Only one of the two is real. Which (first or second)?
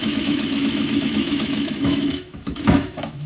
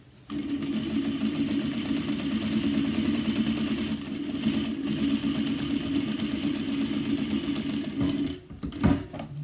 second